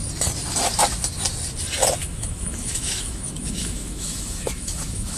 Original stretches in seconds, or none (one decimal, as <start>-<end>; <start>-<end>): 0.0-2.0

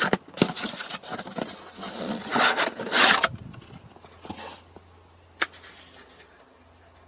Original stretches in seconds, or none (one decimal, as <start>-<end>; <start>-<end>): 0.0-7.1